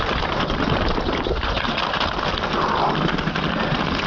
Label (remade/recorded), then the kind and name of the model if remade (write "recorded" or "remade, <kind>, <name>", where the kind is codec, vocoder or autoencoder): recorded